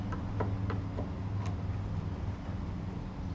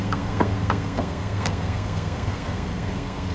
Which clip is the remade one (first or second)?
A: second